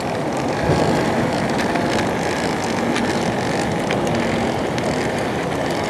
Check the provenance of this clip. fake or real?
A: real